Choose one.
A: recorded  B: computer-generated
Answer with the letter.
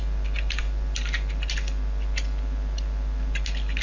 A